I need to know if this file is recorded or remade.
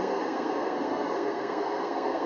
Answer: remade